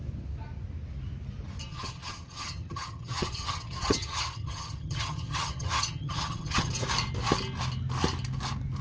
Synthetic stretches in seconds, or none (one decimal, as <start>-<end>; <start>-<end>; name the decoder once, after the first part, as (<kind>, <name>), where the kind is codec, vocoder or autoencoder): 1.7-6.7 (vocoder, HiFi-GAN)